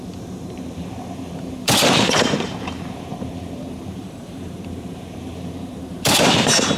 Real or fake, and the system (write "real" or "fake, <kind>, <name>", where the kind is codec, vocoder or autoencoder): fake, vocoder, BigVGAN v2